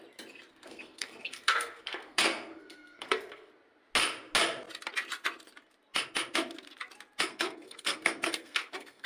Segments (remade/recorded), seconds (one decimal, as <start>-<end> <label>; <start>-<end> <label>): 0.0-0.5 recorded; 0.5-3.5 remade; 3.5-7.3 recorded; 7.3-9.1 remade